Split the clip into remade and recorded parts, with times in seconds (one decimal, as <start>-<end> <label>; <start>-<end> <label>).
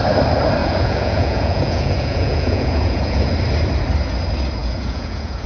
0.0-0.6 recorded; 0.6-3.3 remade; 3.3-4.6 recorded; 4.6-5.5 remade